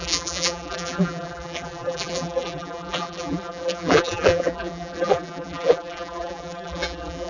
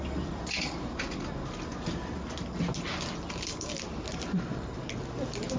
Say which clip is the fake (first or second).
first